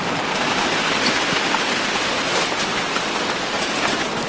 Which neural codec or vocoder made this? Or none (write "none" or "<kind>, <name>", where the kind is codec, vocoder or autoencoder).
none